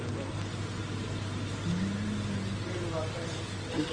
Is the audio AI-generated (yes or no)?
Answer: no